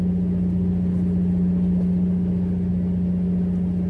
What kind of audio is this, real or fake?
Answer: real